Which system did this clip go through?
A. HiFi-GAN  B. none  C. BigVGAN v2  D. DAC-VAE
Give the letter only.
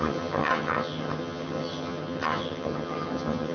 A